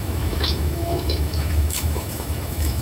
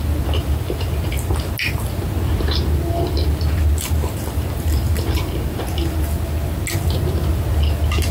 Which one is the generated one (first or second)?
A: first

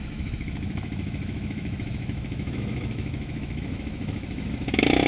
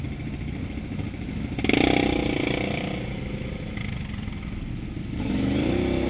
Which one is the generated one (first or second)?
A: first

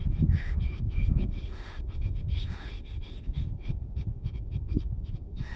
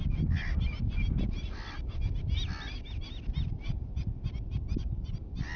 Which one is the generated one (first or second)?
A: first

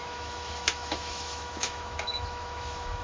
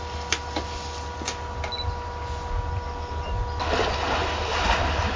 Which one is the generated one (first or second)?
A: first